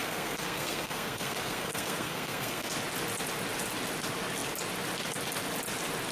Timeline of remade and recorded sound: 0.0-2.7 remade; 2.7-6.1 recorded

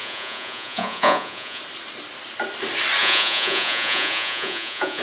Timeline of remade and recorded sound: 0.0-1.6 remade; 1.6-3.0 recorded; 3.0-5.0 remade

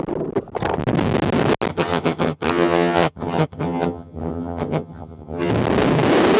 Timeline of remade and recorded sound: 0.0-1.7 recorded; 1.7-5.5 remade; 5.5-6.4 recorded

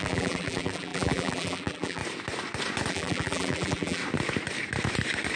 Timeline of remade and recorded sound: 0.0-2.0 remade; 2.0-2.9 recorded; 2.9-4.0 remade; 4.0-5.4 recorded

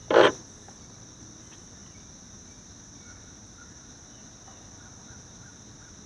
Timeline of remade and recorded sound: 0.0-6.1 recorded

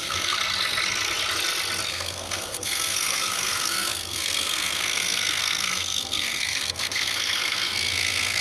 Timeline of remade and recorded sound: 0.0-0.4 remade; 0.4-1.9 recorded; 1.9-8.4 remade

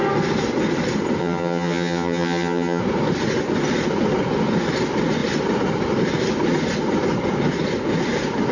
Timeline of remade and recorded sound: 0.0-1.2 recorded; 1.2-2.8 remade; 2.8-8.5 recorded